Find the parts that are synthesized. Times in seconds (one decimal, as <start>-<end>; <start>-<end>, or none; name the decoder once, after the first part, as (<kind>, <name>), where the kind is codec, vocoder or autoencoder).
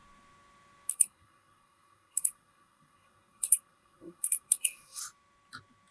0.9-5.0 (codec, SNAC)